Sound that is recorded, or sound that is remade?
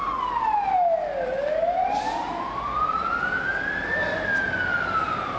recorded